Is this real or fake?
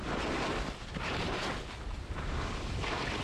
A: real